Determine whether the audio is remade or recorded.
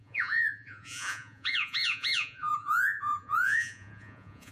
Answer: remade